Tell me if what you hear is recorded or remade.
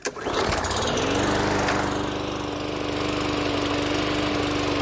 recorded